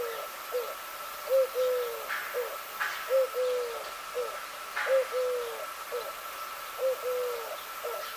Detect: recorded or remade recorded